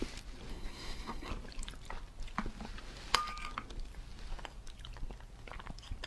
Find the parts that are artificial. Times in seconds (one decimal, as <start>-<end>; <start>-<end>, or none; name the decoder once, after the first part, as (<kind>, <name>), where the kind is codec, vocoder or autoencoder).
0.5-1.3 (codec, SNAC)